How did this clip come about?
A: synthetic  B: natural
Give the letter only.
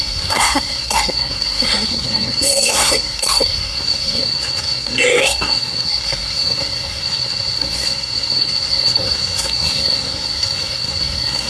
A